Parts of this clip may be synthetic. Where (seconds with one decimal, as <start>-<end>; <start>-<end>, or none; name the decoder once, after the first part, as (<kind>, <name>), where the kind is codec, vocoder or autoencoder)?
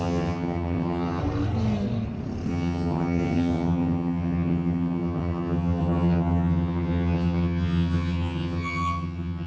0.0-1.2 (vocoder, HiFi-GAN); 2.5-9.5